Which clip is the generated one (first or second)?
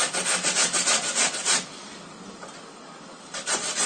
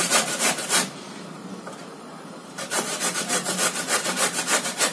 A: second